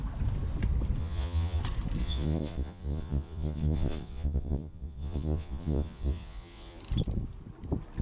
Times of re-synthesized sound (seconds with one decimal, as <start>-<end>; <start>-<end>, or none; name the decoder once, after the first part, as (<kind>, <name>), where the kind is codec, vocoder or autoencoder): 1.0-1.6 (vocoder, Vocos); 2.0-6.8